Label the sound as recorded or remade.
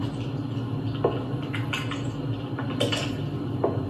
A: recorded